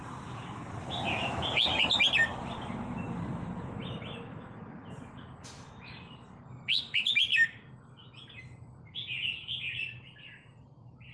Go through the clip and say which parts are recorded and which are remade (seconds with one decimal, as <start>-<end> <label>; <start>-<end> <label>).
0.0-11.1 recorded